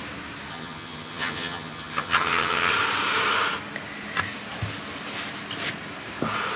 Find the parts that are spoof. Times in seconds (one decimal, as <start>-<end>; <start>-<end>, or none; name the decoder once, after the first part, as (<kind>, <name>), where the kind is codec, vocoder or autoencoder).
0.5-2.7 (vocoder, HiFi-GAN)

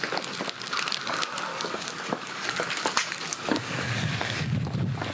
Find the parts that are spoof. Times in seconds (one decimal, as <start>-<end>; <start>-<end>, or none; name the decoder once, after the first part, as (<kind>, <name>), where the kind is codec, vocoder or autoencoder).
1.5-4.6 (codec, DAC)

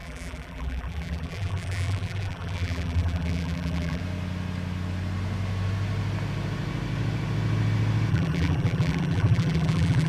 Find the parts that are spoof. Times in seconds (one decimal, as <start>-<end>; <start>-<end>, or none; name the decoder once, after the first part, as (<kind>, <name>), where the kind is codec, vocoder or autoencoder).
0.0-4.0 (vocoder, BigVGAN v2); 8.1-10.1

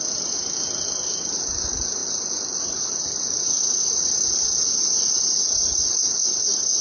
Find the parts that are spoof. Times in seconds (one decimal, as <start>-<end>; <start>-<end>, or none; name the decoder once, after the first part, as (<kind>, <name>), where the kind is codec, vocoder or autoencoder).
none

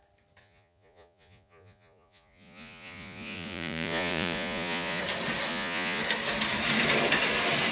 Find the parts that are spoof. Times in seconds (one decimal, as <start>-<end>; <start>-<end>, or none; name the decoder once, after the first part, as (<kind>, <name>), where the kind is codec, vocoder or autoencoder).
0.4-5.0 (vocoder, Vocos); 5.5-6.0

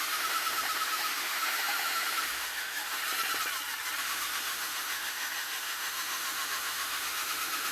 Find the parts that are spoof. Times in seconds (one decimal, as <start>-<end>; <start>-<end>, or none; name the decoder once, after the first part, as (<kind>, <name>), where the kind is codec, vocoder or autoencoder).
0.0-3.0 (autoencoder, DAC-VAE); 4.0-7.7

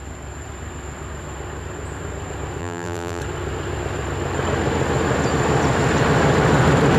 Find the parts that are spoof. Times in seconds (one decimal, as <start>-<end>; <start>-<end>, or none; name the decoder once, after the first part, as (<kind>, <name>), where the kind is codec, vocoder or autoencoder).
2.6-3.2 (vocoder, BigVGAN v2)

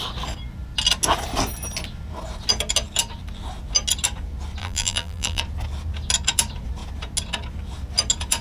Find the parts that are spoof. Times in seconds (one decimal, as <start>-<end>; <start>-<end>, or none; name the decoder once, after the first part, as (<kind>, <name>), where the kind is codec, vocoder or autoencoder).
4.6-5.4 (vocoder, BigVGAN v2)